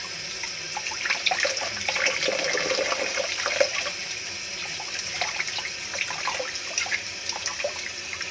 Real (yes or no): yes